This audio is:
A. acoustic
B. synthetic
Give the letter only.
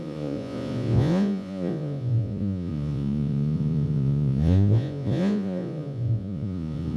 B